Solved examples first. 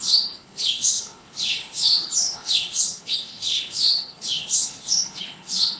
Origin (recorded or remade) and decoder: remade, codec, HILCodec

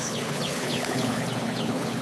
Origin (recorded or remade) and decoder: remade, codec, HILCodec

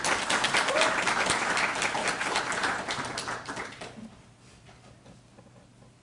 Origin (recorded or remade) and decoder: recorded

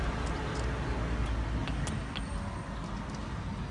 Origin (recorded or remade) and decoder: recorded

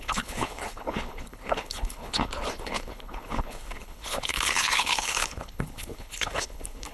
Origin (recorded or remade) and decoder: remade, codec, HILCodec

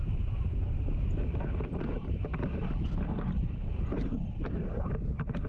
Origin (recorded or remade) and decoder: recorded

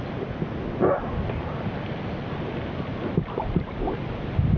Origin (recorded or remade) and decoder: recorded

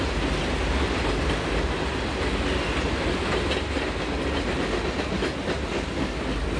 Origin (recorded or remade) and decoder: recorded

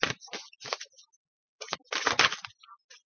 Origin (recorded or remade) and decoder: recorded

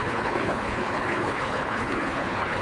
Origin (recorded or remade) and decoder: remade, codec, HILCodec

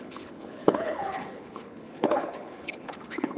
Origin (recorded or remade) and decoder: remade, codec, HILCodec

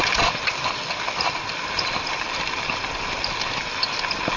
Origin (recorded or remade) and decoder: recorded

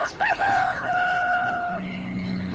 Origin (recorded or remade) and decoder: remade, codec, HILCodec